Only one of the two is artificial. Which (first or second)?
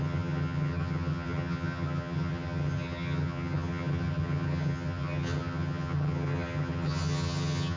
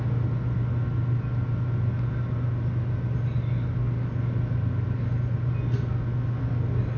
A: first